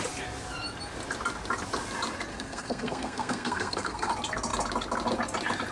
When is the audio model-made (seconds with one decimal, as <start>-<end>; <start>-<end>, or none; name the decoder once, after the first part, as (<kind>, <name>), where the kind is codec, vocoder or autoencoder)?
2.3-4.1 (codec, SNAC)